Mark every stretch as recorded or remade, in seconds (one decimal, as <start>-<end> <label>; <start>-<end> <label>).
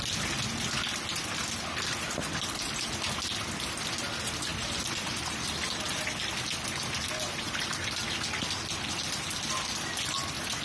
0.0-4.5 recorded; 4.5-6.3 remade; 6.3-10.6 recorded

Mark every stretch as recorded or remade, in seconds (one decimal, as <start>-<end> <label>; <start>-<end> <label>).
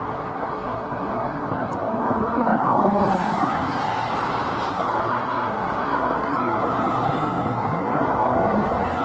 0.0-4.1 remade; 4.1-4.7 recorded; 4.7-9.0 remade